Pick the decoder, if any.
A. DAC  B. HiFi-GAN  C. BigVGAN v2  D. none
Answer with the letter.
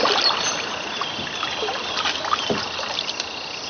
D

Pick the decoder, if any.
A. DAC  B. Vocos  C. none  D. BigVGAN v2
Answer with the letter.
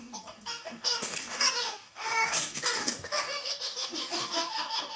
A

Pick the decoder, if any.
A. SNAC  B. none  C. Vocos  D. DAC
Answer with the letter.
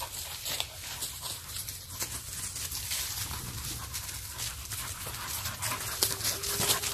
B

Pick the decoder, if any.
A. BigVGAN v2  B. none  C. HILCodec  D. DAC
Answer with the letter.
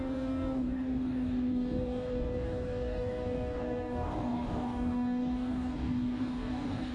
D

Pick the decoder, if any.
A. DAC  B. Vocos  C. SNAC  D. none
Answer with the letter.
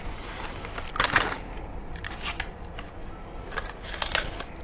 D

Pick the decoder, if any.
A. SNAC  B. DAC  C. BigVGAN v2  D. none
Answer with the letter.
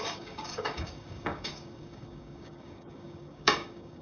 B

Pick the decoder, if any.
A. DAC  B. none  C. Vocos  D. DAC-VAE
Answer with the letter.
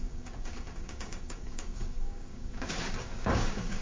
A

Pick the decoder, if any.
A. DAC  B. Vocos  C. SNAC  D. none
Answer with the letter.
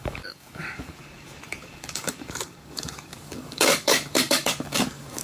A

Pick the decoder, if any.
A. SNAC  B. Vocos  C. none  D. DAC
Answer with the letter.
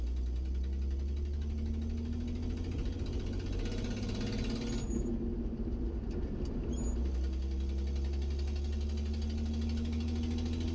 C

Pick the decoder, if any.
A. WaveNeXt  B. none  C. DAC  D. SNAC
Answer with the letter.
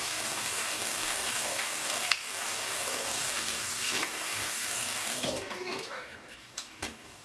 C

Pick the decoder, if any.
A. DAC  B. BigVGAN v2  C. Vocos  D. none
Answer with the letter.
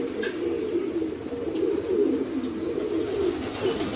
D